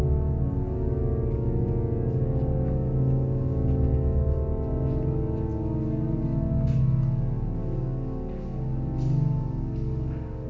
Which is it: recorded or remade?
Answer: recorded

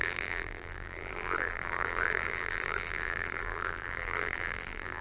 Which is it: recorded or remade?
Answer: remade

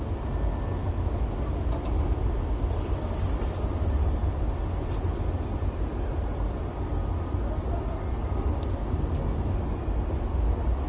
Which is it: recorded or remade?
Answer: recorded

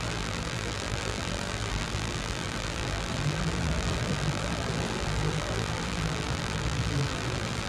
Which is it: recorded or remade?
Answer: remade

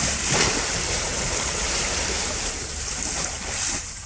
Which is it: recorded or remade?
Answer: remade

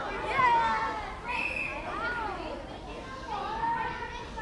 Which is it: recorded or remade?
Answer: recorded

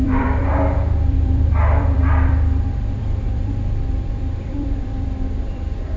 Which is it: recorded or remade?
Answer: remade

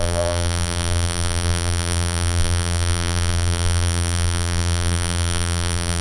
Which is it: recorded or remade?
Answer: remade